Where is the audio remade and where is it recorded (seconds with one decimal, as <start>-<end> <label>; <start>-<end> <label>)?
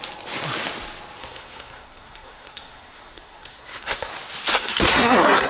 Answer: 0.0-1.2 recorded; 1.2-4.1 remade; 4.1-4.5 recorded; 4.5-5.5 remade